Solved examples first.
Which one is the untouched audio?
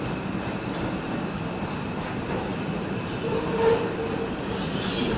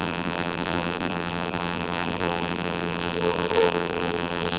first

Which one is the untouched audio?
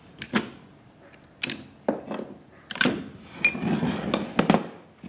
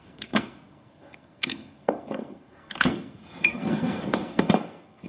first